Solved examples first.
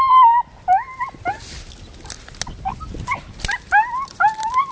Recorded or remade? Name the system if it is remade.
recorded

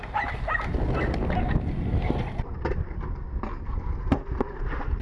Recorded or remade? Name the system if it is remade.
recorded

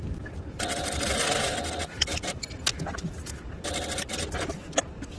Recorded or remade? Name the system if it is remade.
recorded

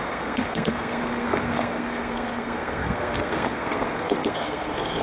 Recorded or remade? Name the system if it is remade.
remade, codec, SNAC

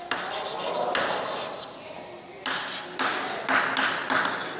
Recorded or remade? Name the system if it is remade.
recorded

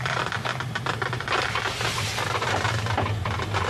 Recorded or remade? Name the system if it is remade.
recorded